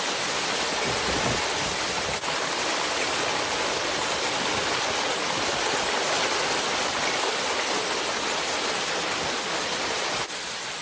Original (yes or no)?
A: yes